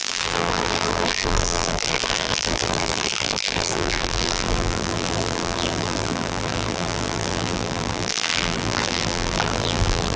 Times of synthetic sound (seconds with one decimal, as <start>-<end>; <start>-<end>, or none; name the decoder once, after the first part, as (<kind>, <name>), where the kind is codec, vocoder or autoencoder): 0.0-10.2 (vocoder, BigVGAN v2)

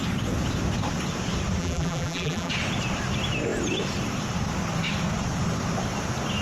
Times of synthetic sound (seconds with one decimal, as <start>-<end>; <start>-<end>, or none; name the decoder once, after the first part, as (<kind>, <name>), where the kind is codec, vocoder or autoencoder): 1.6-2.5 (vocoder, BigVGAN v2)